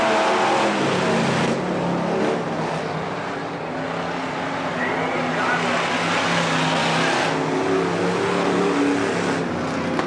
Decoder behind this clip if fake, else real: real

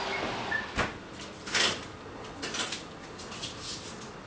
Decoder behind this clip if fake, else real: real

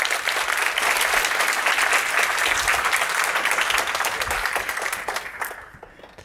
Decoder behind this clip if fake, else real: real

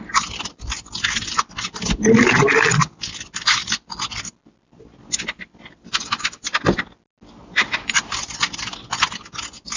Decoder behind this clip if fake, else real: real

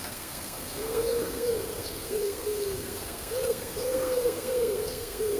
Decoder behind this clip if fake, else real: fake, codec, SNAC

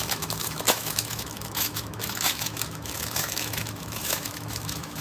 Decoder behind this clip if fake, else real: fake, autoencoder, DAC-VAE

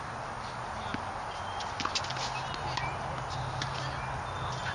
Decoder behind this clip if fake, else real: real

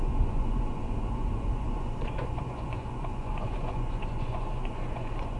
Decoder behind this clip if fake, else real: fake, vocoder, Vocos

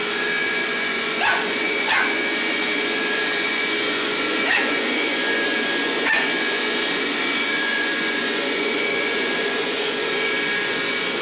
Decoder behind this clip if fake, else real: fake, vocoder, Vocos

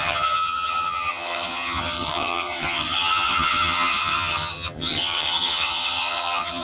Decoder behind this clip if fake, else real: fake, vocoder, HiFi-GAN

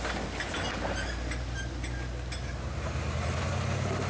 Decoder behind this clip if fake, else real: real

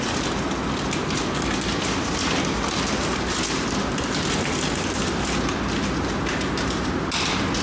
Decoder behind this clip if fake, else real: real